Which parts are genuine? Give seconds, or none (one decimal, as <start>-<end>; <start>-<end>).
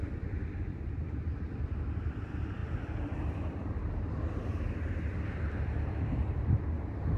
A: 0.0-7.2